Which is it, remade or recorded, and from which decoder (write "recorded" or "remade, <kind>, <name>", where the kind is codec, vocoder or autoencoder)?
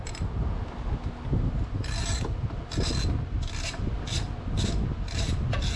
recorded